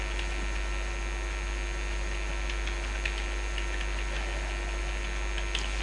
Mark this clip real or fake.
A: real